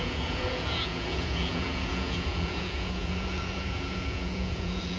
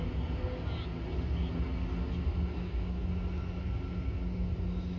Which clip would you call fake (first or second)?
first